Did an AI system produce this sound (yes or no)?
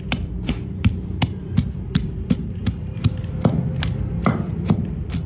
yes